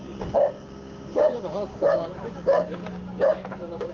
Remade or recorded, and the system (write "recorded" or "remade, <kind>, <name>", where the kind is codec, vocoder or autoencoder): remade, codec, DAC